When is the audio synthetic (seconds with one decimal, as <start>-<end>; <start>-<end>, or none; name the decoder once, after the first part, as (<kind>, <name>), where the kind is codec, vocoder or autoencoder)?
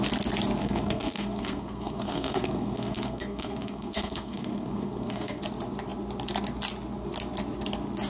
0.6-5.4 (codec, SNAC)